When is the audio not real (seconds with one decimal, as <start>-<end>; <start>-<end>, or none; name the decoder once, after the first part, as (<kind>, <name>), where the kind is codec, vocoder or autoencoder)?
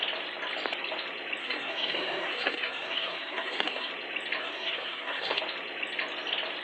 1.4-3.9 (codec, SNAC); 4.4-5.4